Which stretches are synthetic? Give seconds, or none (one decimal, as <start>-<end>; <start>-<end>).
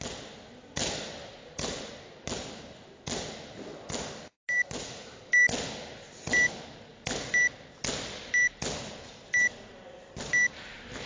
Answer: 1.4-1.9